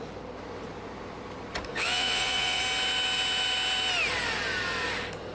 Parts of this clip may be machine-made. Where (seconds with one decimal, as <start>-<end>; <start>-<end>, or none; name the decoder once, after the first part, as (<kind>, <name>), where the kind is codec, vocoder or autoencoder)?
1.7-2.6 (vocoder, Vocos)